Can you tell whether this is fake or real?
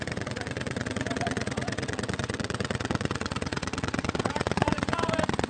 fake